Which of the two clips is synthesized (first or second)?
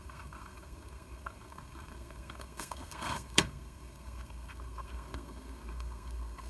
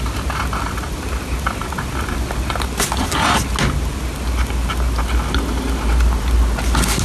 first